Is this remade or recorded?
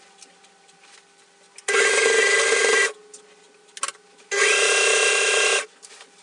recorded